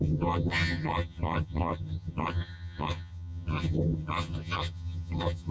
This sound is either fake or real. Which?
fake